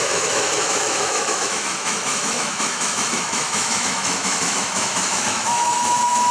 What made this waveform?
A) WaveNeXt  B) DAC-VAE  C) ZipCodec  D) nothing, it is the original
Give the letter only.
B